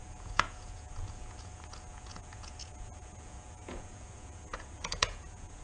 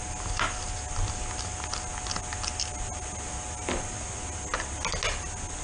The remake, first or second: first